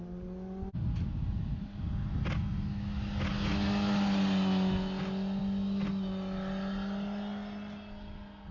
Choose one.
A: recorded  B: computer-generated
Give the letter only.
A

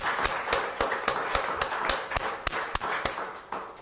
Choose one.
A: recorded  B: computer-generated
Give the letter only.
A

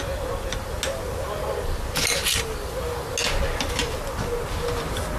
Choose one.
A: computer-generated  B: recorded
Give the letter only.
B